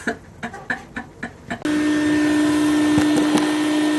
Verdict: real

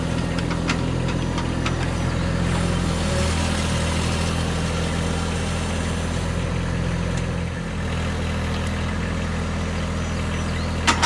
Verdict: real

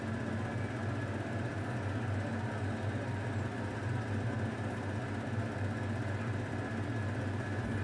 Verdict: real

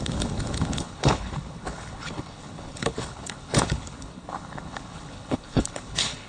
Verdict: fake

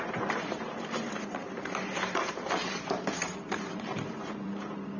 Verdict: fake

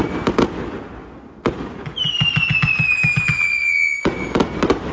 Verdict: real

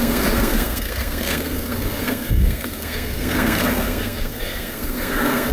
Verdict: fake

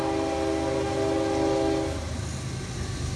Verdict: real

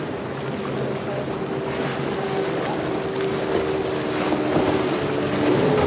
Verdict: real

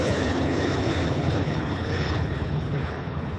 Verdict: fake